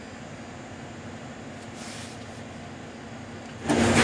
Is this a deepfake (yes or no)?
no